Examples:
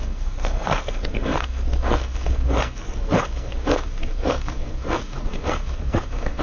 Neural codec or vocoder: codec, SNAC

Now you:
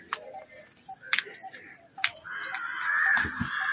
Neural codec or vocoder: none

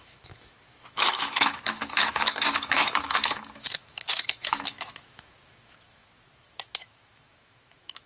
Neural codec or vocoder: autoencoder, DAC-VAE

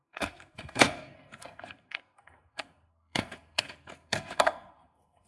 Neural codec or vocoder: codec, SNAC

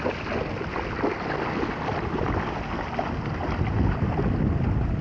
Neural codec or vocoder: none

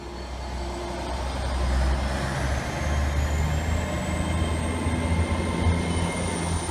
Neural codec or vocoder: none